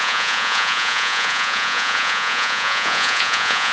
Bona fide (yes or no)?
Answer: no